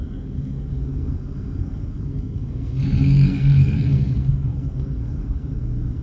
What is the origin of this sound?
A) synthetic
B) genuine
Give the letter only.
A